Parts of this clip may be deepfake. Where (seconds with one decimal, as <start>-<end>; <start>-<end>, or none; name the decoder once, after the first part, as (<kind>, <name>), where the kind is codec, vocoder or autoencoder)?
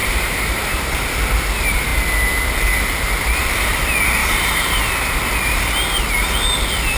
0.0-1.0 (vocoder, BigVGAN v2); 4.2-4.8